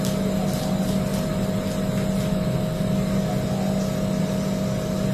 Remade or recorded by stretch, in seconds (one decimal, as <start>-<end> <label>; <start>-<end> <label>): 0.0-5.1 recorded